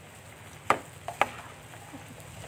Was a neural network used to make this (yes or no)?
no